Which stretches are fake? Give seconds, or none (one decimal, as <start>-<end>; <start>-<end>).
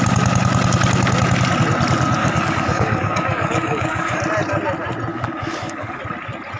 2.2-4.2; 5.1-6.0